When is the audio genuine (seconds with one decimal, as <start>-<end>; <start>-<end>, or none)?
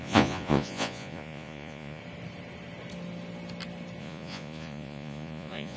2.0-4.0